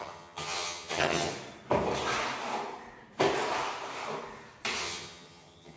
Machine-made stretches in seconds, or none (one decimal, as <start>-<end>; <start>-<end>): 0.0-1.3; 4.8-5.8